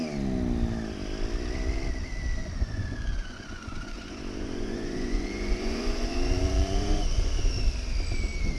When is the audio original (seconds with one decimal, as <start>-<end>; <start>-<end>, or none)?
0.0-2.4; 7.4-8.6